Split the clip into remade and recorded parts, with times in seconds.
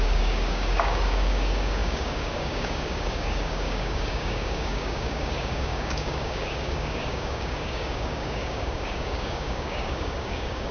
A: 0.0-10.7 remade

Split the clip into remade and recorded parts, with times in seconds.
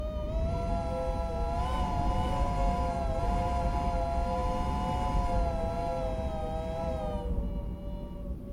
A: 0.0-8.5 recorded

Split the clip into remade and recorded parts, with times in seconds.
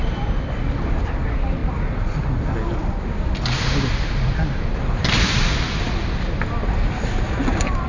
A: 0.0-7.9 recorded